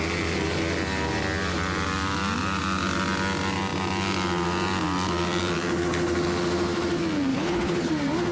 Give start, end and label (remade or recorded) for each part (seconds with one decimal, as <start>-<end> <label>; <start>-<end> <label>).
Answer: 0.0-7.3 recorded; 7.3-7.9 remade; 7.9-8.3 recorded